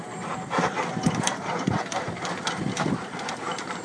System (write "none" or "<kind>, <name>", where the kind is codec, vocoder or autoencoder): vocoder, BigVGAN v2